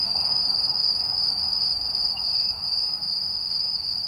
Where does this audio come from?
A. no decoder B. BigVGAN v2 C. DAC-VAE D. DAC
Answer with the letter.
D